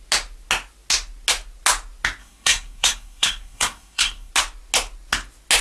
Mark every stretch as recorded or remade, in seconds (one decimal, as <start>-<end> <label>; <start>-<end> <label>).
0.0-2.2 recorded; 2.2-4.3 remade; 4.3-5.6 recorded